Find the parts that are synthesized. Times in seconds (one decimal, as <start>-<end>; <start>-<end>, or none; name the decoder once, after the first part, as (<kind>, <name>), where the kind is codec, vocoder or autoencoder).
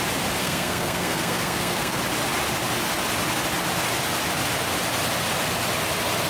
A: 0.4-2.0 (codec, SNAC)